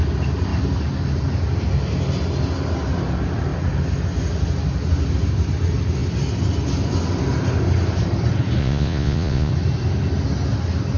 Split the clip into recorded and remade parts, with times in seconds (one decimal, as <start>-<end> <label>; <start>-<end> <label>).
0.0-8.6 recorded; 8.6-9.5 remade; 9.5-11.0 recorded